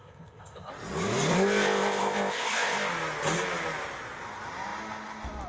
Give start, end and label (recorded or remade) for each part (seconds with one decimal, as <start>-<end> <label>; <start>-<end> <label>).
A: 0.0-0.7 remade; 0.7-1.3 recorded; 1.3-2.9 remade; 2.9-5.5 recorded